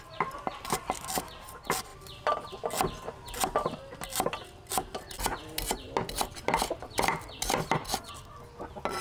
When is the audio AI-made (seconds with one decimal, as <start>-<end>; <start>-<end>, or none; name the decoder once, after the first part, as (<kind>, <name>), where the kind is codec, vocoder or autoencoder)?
none